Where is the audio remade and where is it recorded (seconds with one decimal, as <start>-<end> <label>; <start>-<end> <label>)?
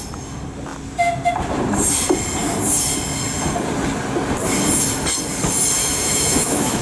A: 0.0-5.8 recorded; 5.8-6.8 remade